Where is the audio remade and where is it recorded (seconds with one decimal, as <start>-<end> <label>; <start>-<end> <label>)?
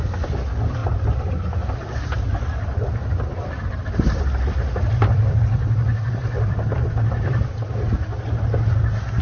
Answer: 0.0-0.8 recorded; 0.8-5.4 remade; 5.4-6.2 recorded; 6.2-7.7 remade; 7.7-9.2 recorded